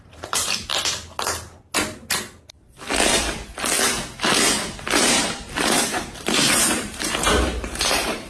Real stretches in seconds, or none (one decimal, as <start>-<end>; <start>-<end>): 0.7-4.8